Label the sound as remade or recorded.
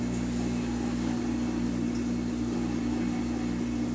recorded